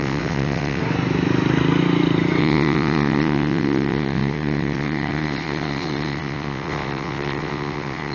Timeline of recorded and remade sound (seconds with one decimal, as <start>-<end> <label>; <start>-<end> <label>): 0.0-0.8 remade; 0.8-2.4 recorded; 2.4-8.1 remade